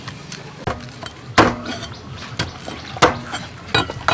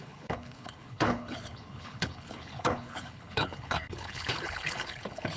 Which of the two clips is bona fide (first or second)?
first